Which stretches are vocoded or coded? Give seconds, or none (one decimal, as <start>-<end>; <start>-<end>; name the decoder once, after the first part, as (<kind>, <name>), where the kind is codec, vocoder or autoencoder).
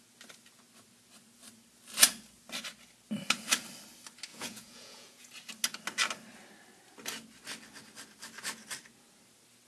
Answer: 4.3-5.3 (vocoder, Vocos)